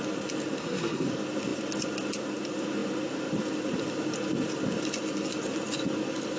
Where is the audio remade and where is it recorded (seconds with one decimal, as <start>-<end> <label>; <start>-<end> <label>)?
0.0-0.6 recorded; 0.6-1.1 remade; 1.1-6.4 recorded